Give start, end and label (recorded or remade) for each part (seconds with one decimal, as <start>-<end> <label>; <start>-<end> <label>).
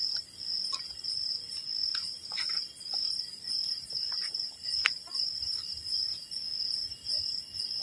0.0-7.8 recorded